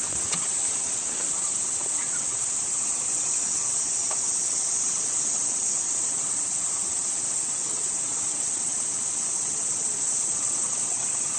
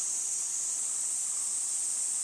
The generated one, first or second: first